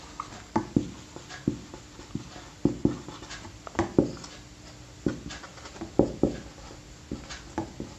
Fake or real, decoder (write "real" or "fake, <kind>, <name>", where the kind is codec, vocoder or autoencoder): real